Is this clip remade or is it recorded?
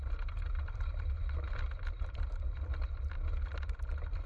recorded